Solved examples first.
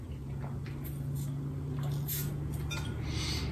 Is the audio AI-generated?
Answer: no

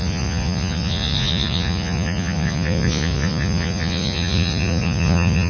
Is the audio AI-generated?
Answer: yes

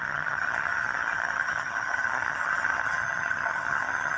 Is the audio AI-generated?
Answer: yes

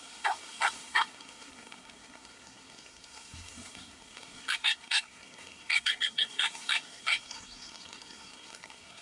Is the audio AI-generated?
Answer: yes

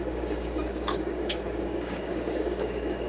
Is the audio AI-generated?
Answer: yes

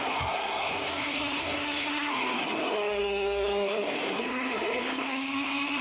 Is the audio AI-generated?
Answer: yes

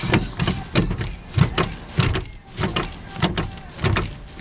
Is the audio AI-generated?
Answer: no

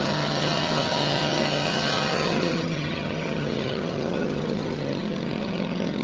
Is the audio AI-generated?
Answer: yes